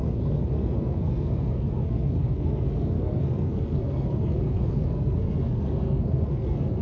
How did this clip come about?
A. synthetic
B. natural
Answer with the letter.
A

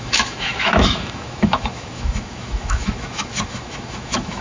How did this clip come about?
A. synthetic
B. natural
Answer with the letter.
A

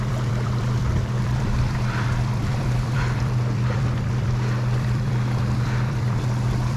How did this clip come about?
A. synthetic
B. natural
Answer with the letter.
A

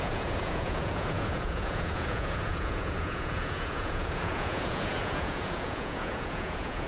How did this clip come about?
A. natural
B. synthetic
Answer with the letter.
B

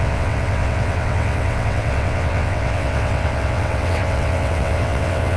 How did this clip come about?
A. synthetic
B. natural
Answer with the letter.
A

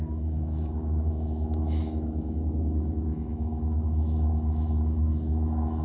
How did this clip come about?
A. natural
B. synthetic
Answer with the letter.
B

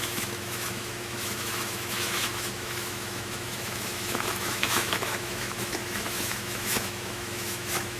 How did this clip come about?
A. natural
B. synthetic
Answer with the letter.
B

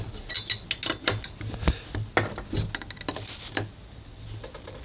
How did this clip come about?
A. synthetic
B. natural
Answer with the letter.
B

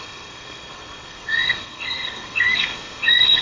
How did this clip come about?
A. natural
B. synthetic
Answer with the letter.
B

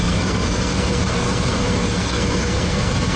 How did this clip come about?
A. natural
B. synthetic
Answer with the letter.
B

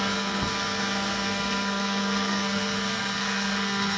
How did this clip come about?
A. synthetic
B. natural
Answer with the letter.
A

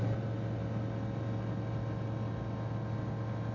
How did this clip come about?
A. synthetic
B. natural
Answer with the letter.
B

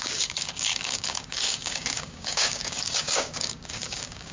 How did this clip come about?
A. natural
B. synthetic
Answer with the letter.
B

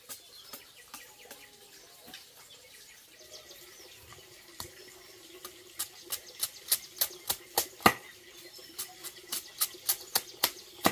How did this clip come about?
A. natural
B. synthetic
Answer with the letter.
A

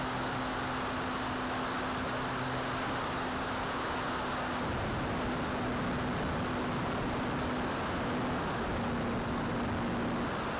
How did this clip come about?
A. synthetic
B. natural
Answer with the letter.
B